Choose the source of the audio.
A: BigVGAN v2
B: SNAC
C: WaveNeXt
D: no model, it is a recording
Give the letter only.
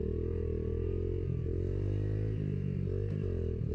D